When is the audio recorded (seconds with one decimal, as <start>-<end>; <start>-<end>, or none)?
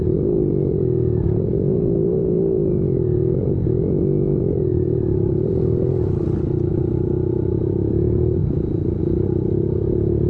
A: 0.0-4.7; 5.5-10.3